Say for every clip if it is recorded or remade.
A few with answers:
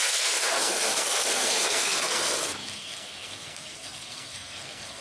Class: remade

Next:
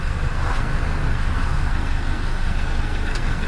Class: remade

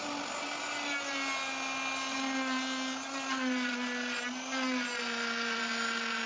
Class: recorded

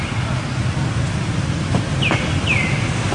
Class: recorded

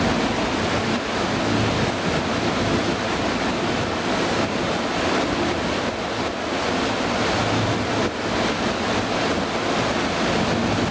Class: recorded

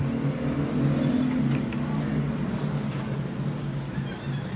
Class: recorded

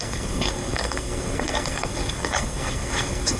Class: remade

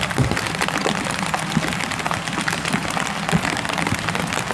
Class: recorded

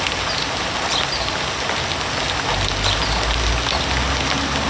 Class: recorded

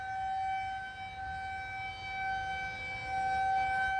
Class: recorded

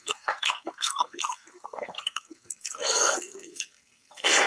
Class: remade